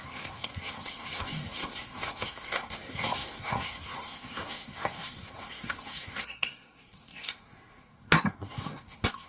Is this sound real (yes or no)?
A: no